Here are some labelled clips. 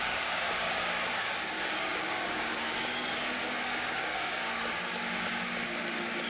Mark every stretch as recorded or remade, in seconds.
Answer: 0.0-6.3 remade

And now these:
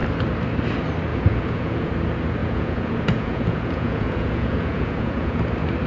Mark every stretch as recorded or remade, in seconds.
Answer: 0.0-1.1 recorded; 1.1-1.9 remade; 1.9-2.4 recorded; 2.4-5.4 remade; 5.4-5.9 recorded